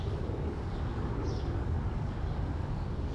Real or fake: fake